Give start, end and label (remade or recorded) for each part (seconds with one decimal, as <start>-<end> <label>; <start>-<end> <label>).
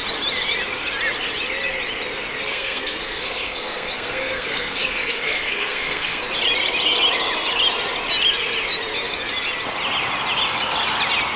0.0-2.5 recorded; 2.5-6.2 remade; 6.2-11.4 recorded